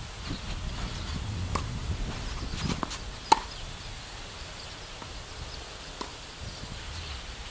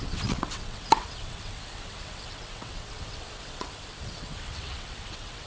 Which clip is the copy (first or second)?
second